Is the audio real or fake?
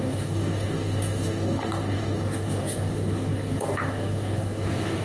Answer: fake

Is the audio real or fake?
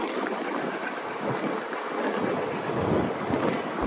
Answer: real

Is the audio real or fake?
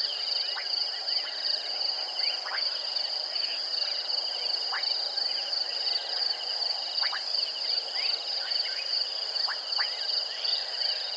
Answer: real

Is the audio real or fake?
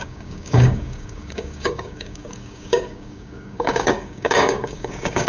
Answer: fake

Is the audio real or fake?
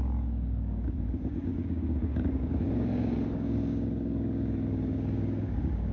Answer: fake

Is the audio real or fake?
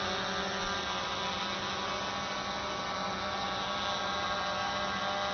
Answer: real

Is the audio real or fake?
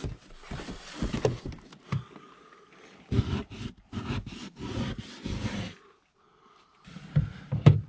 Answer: real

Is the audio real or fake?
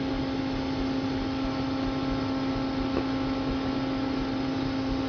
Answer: real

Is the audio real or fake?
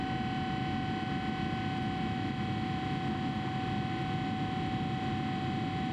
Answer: real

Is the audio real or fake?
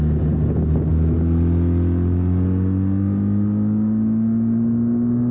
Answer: real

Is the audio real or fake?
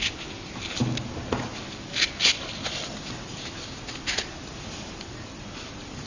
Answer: real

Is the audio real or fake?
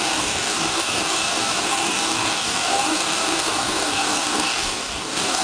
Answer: fake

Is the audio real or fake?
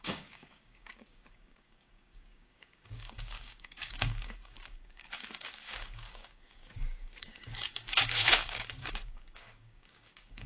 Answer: fake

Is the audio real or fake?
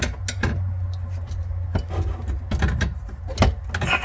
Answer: real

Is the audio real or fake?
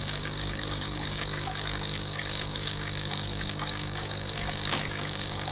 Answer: fake